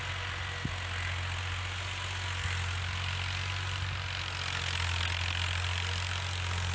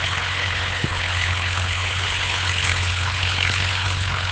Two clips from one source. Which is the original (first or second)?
first